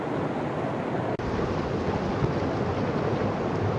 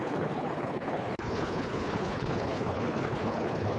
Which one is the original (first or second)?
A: first